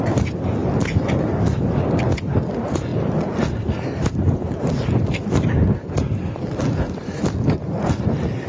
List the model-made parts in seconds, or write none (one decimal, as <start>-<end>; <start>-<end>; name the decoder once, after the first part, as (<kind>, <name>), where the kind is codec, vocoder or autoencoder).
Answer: none